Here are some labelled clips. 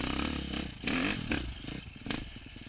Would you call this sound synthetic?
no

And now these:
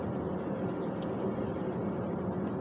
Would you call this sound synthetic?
no